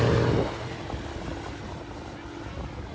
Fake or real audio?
real